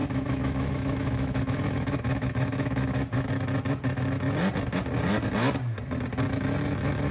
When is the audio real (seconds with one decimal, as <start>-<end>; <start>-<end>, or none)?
3.3-7.1